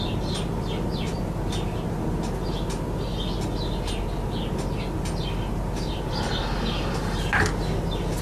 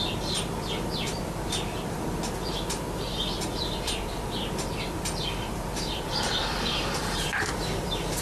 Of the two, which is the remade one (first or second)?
second